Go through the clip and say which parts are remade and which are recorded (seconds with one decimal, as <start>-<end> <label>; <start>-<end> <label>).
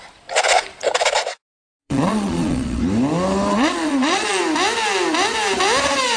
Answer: 0.0-1.8 recorded; 1.8-2.8 remade; 2.8-3.5 recorded; 3.5-4.4 remade; 4.4-6.2 recorded